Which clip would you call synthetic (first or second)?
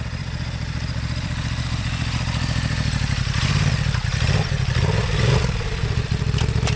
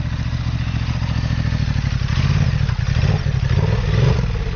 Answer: first